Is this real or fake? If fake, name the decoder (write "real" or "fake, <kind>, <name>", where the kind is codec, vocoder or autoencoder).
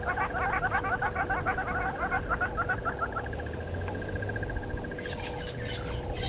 real